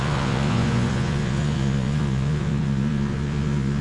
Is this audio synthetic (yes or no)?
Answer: yes